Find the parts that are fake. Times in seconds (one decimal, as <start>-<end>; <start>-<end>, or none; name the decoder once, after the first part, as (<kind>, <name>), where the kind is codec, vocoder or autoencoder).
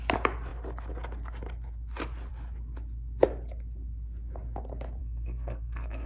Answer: 5.0-6.1 (codec, SNAC)